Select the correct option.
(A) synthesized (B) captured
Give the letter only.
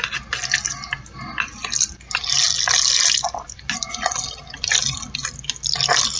B